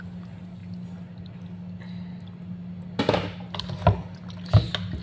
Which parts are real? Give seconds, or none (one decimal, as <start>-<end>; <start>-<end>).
0.0-5.0